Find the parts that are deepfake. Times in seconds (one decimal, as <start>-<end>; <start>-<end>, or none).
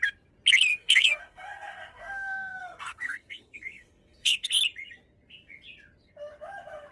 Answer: 0.7-4.5